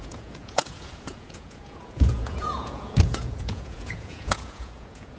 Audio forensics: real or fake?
fake